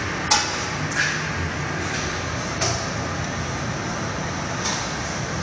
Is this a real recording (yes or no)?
yes